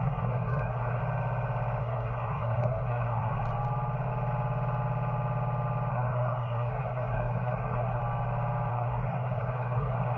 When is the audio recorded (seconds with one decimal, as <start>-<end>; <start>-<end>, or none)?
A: 1.0-1.8; 3.3-5.9; 8.0-8.7